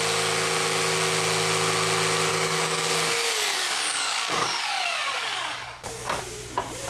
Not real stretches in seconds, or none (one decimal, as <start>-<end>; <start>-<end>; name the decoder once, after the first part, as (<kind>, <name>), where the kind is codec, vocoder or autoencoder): 2.3-6.2 (codec, DAC)